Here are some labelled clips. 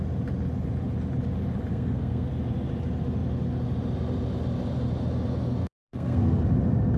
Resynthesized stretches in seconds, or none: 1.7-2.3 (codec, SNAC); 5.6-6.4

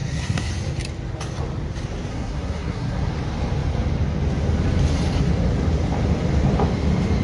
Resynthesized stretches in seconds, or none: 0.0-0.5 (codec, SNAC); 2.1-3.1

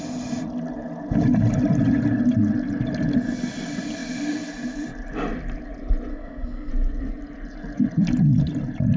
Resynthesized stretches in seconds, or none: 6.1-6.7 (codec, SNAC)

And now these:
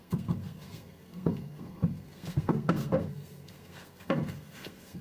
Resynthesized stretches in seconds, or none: 0.0-5.0 (codec, SNAC)